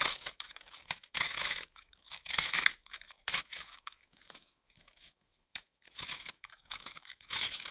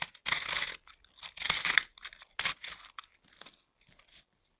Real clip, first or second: second